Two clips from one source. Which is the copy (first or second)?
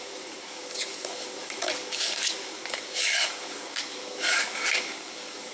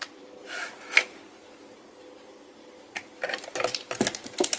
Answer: first